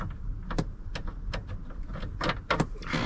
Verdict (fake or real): real